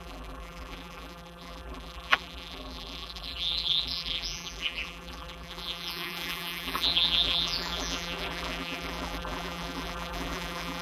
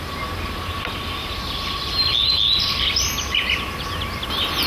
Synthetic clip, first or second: first